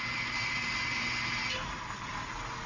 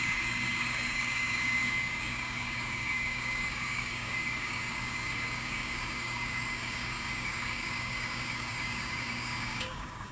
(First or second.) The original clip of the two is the first